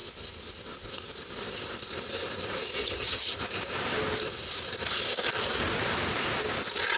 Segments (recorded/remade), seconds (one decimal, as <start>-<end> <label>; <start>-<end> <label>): 0.0-2.8 recorded; 2.8-3.3 remade; 3.3-7.0 recorded